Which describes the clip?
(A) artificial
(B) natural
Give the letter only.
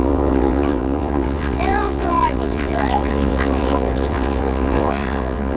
A